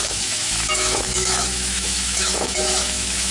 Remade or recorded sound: remade